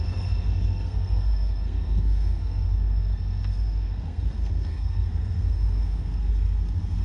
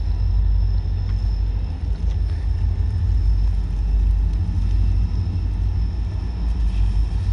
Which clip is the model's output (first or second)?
first